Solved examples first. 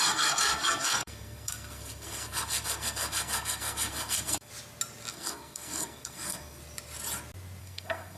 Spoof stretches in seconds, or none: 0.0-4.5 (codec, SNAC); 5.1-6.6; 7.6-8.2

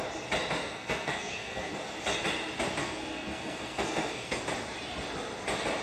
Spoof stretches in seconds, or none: 0.6-1.7 (codec, SNAC); 2.8-4.4

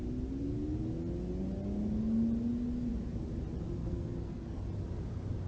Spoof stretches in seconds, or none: 3.8-4.6 (codec, SNAC)

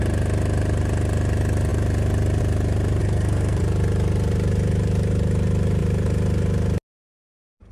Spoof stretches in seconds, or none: 3.0-3.6 (codec, SNAC)

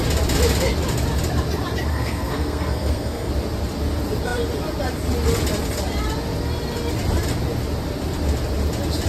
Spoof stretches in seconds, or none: 1.9-3.3 (codec, SNAC)

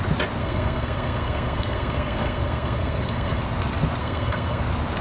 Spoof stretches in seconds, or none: 0.4-3.4 (codec, SNAC); 4.0-4.6